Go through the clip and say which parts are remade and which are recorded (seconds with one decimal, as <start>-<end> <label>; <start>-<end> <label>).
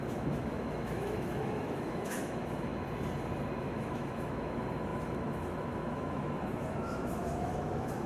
0.0-2.7 remade; 2.7-3.6 recorded; 3.6-8.1 remade